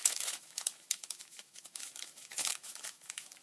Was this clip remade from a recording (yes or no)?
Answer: yes